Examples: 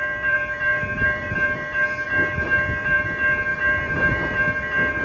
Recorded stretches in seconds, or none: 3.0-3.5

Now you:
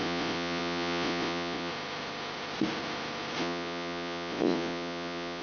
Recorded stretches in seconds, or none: 1.7-3.4

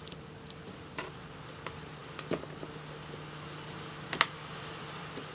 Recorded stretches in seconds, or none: 0.0-5.3

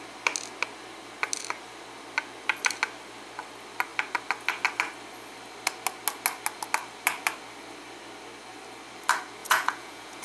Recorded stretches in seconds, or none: 0.0-9.4

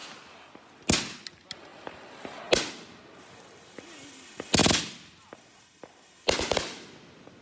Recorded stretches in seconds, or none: 0.0-7.4